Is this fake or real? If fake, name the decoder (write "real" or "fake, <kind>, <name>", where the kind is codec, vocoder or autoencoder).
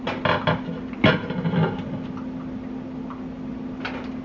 real